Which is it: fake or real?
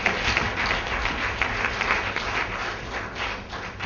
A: real